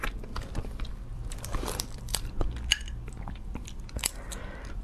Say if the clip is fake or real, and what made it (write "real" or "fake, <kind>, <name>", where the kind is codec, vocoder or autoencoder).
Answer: fake, vocoder, BigVGAN v2